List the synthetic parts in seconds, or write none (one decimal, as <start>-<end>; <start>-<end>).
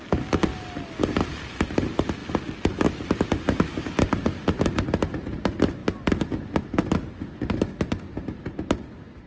none